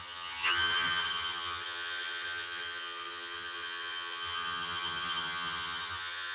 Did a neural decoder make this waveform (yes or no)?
yes